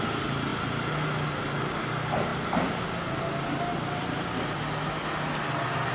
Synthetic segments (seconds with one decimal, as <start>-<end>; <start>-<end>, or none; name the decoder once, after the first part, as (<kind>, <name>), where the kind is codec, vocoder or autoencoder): none